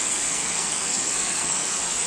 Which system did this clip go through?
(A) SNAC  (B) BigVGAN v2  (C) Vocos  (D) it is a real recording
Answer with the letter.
A